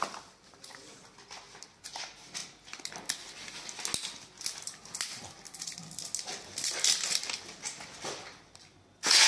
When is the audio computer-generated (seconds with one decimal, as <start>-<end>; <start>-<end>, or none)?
none